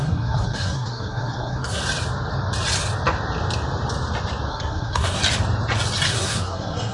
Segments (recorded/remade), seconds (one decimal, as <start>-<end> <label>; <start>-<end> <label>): 0.0-1.8 remade; 1.8-4.5 recorded; 4.5-5.2 remade; 5.2-6.1 recorded; 6.1-6.9 remade

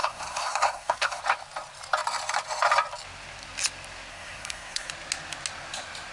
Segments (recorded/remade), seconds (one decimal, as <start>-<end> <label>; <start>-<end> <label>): 0.0-1.2 remade; 1.2-4.1 recorded; 4.1-4.9 remade; 4.9-6.1 recorded

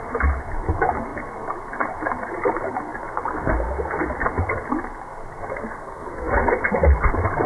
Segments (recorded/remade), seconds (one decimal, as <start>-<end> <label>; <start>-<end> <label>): 0.0-5.4 recorded; 5.4-6.3 remade; 6.3-7.5 recorded

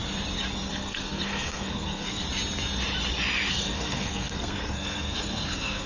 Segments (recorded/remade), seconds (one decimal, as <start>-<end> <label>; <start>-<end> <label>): 0.0-0.7 recorded; 0.7-2.2 remade; 2.2-3.5 recorded; 3.5-5.9 remade